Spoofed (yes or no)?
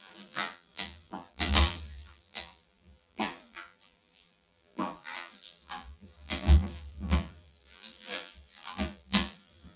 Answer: yes